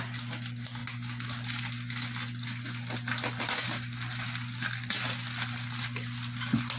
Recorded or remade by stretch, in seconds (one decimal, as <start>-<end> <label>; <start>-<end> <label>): 0.0-6.8 recorded